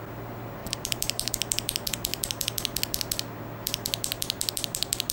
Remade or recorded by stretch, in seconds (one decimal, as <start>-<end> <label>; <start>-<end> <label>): 0.0-0.6 recorded; 0.6-1.3 remade; 1.3-5.1 recorded